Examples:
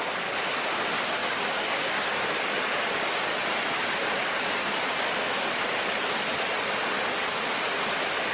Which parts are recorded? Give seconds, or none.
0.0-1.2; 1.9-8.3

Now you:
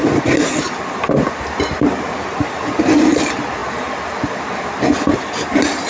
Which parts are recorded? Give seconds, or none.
0.0-5.9

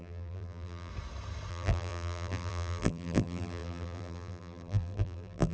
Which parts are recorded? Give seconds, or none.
0.9-1.5

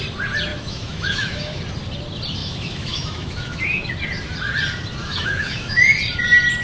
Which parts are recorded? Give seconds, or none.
0.0-0.5; 1.6-2.4; 3.9-5.0; 5.8-6.6